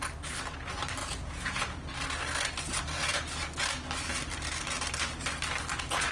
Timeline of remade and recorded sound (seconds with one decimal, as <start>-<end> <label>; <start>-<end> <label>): 0.0-1.0 recorded; 1.0-1.9 remade; 1.9-6.1 recorded